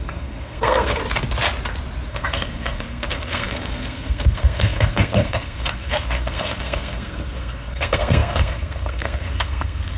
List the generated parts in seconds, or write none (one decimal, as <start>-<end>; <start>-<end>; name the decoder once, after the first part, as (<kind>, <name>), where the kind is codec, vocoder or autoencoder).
0.0-1.0 (codec, SNAC); 2.1-10.0